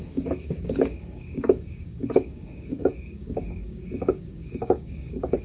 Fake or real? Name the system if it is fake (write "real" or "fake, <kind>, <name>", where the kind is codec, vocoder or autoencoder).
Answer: fake, codec, DAC